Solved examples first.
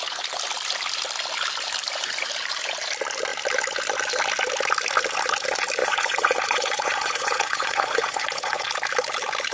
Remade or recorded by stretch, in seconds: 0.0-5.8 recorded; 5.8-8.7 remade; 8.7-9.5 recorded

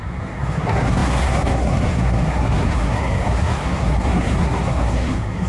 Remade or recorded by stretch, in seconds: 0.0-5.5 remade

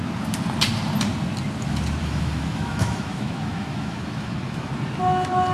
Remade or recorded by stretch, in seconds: 0.0-2.0 recorded; 2.0-4.7 remade; 4.7-5.5 recorded